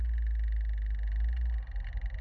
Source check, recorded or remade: recorded